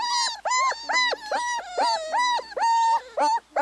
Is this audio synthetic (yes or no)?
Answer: no